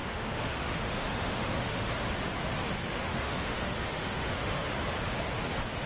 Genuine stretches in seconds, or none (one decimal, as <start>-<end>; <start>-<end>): 1.9-2.9; 4.7-5.9

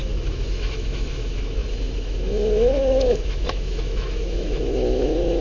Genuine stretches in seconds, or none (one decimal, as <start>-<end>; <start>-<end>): none

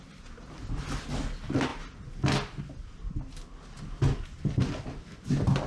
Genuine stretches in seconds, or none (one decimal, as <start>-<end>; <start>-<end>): 0.0-5.7

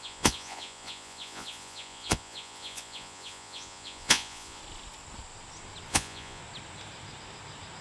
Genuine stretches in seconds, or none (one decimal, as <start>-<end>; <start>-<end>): 4.6-5.9; 6.4-7.8

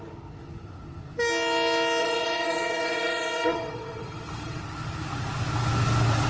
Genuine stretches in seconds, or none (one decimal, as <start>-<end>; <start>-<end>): 0.0-2.0; 4.6-6.3